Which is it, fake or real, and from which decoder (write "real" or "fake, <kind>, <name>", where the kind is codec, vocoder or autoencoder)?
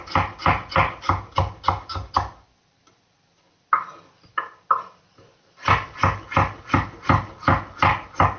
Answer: real